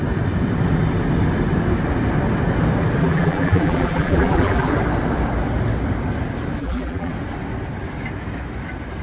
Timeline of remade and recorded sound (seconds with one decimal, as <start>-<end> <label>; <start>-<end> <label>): 0.0-3.0 recorded; 3.0-4.7 remade; 4.7-6.6 recorded; 6.6-7.1 remade; 7.1-9.0 recorded